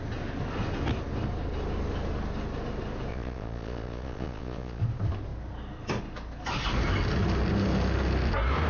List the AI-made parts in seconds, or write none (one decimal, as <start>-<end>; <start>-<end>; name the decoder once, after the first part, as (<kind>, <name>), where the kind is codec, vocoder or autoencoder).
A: 3.1-4.8 (vocoder, Vocos)